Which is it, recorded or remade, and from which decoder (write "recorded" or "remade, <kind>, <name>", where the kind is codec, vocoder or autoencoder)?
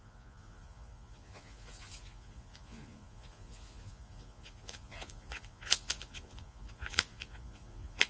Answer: remade, vocoder, Vocos